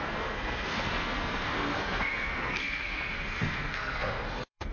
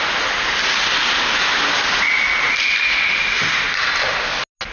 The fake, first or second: first